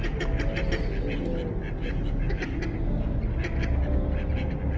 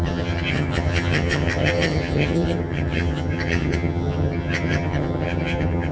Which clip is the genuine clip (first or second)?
first